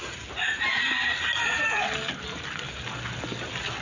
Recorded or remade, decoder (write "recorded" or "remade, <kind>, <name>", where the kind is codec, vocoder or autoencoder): recorded